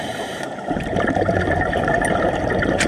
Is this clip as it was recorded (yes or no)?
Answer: no